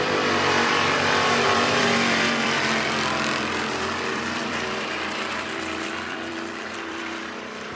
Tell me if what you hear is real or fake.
fake